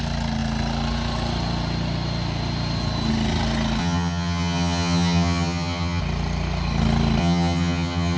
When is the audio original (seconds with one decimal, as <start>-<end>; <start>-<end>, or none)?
0.0-3.8; 6.0-7.2